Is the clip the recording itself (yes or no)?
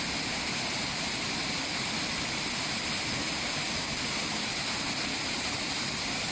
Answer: yes